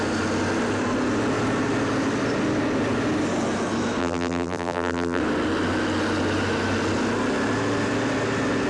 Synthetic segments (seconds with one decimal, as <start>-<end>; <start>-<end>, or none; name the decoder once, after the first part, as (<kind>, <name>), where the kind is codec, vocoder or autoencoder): 4.0-5.2 (vocoder, BigVGAN v2)